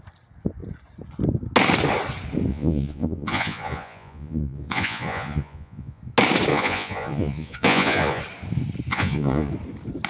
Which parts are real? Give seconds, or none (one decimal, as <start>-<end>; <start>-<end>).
0.0-2.5; 6.0-6.5; 8.2-8.9; 9.5-10.1